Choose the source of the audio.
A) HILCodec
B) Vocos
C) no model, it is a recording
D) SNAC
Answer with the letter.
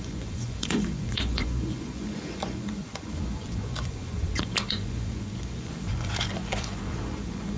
B